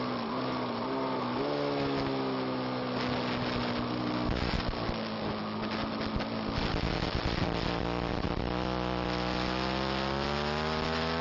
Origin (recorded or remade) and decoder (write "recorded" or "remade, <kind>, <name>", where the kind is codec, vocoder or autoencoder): recorded